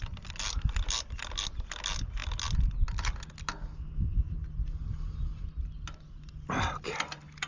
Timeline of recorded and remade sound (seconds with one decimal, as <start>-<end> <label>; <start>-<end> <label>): 0.0-7.5 recorded